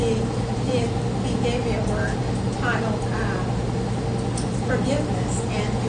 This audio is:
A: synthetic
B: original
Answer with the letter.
B